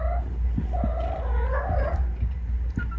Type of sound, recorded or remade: recorded